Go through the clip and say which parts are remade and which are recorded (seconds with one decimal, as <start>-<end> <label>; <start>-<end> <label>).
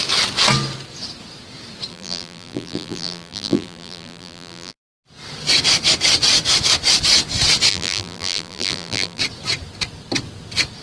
0.0-1.9 recorded; 1.9-4.9 remade; 4.9-7.7 recorded; 7.7-9.2 remade; 9.2-10.8 recorded